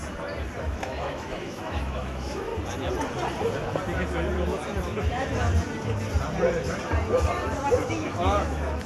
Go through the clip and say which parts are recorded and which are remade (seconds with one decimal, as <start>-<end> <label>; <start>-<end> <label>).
0.0-0.6 recorded; 0.6-2.5 remade; 2.5-7.7 recorded; 7.7-8.9 remade